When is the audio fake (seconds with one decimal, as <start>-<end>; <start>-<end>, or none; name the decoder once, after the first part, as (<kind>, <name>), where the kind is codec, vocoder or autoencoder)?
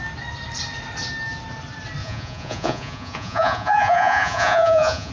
2.0-5.1 (vocoder, Vocos)